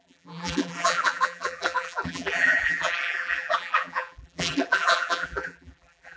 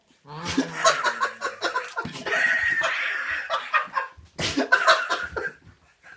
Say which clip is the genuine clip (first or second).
second